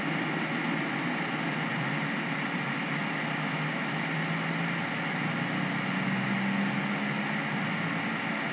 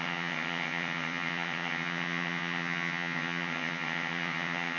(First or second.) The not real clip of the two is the second